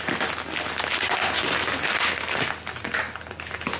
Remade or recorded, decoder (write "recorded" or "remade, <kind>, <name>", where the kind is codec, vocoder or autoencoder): recorded